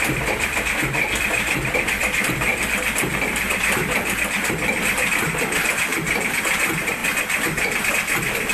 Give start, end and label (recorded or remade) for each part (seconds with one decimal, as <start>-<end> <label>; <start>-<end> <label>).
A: 0.0-5.9 remade; 5.9-6.6 recorded; 6.6-7.0 remade; 7.0-7.9 recorded; 7.9-8.5 remade